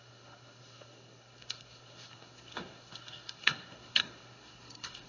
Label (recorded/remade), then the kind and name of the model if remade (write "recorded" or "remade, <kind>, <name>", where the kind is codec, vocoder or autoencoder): remade, codec, SNAC